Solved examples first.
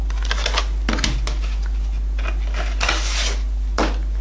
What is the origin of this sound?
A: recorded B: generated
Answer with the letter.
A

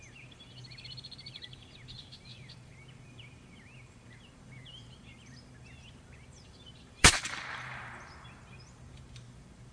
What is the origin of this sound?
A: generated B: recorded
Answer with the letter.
A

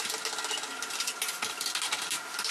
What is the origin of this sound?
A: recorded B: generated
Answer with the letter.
A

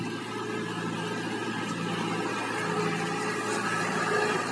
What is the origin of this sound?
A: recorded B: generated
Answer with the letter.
A